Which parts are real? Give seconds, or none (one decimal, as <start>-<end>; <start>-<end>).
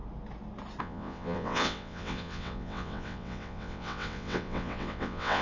0.0-0.8